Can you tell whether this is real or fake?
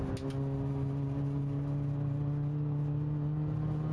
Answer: real